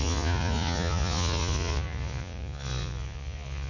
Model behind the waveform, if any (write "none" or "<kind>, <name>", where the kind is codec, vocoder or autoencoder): vocoder, Vocos